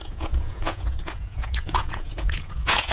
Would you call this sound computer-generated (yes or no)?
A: yes